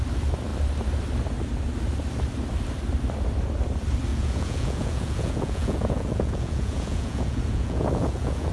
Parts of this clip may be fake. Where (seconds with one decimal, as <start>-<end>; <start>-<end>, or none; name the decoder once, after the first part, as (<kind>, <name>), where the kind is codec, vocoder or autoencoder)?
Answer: 4.1-8.5 (vocoder, Vocos)